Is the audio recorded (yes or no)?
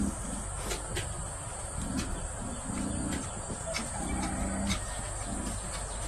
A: yes